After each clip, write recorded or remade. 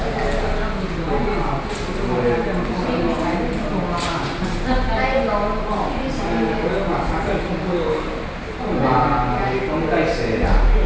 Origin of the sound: recorded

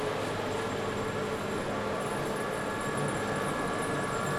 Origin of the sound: recorded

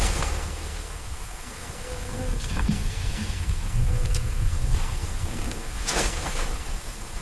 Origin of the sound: remade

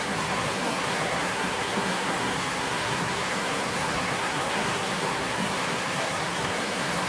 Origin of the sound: remade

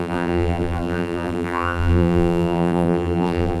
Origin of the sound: remade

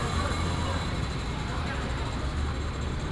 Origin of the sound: remade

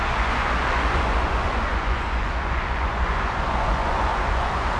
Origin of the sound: remade